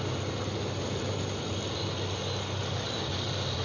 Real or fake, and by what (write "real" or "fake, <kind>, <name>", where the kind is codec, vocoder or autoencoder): real